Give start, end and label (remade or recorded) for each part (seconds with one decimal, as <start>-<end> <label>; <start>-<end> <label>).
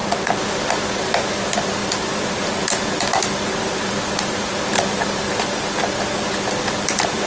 0.0-7.3 recorded